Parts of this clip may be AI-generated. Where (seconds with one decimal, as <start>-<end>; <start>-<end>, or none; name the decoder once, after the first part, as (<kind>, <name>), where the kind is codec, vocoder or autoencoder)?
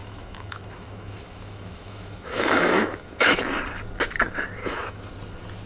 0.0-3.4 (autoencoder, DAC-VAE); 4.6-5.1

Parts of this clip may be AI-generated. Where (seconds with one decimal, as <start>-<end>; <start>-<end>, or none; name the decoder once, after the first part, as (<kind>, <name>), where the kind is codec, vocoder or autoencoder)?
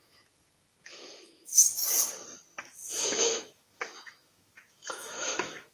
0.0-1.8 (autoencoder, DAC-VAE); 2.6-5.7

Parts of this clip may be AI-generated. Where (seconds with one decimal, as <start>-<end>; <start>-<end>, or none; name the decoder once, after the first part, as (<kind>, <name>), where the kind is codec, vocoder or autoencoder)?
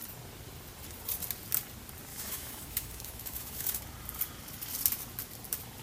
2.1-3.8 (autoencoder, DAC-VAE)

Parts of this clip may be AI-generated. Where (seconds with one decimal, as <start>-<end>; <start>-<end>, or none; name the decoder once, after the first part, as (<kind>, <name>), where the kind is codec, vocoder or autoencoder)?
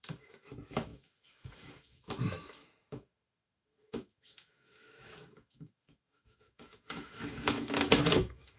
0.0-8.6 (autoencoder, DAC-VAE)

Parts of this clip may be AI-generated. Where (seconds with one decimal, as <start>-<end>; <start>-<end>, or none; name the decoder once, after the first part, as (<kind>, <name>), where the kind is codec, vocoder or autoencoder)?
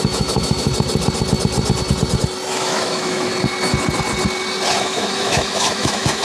0.0-0.7 (autoencoder, DAC-VAE); 2.5-3.3; 4.8-6.2